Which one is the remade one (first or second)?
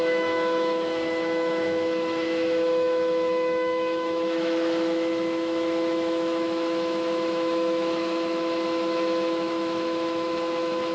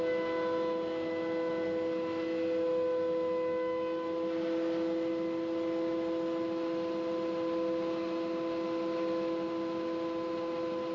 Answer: first